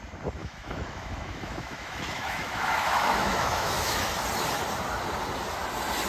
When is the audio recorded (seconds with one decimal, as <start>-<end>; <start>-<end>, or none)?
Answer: 0.0-0.4; 4.1-6.1